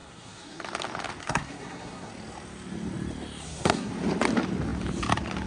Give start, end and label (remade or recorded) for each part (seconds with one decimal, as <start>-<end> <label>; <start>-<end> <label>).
0.0-0.6 remade; 0.6-1.2 recorded; 1.2-2.1 remade; 2.1-3.4 recorded; 3.4-3.9 remade; 3.9-5.5 recorded